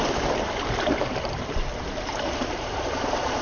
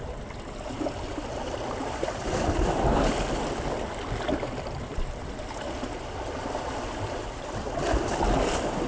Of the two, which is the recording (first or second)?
second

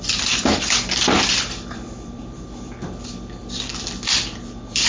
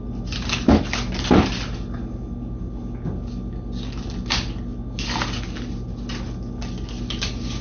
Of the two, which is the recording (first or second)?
second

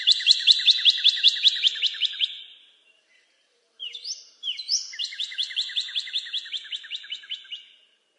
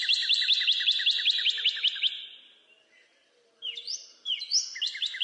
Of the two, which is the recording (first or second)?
second